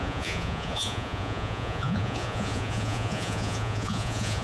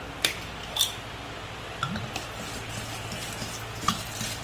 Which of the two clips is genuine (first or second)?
second